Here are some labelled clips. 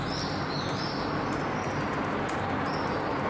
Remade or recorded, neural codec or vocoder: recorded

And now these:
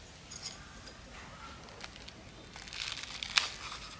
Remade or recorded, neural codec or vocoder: recorded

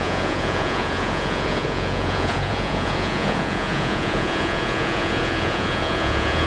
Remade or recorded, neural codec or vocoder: remade, vocoder, Vocos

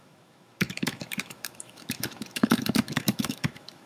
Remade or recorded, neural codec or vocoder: remade, autoencoder, DAC-VAE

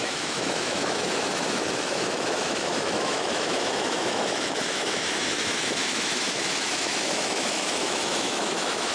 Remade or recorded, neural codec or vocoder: remade, autoencoder, DAC-VAE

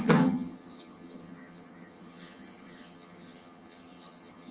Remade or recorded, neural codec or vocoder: remade, vocoder, HiFi-GAN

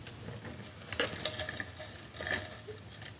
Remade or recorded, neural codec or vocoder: recorded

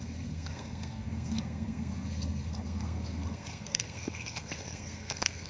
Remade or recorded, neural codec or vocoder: remade, codec, SNAC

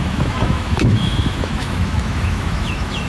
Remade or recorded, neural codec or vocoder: remade, autoencoder, DAC-VAE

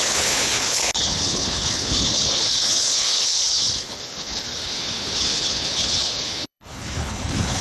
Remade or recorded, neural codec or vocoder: remade, codec, HILCodec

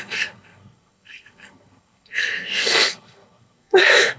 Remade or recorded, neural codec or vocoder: remade, codec, SNAC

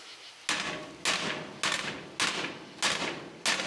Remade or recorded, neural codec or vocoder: recorded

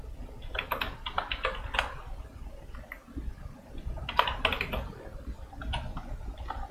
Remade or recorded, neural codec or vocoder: recorded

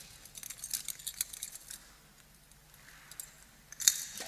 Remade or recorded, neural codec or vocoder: recorded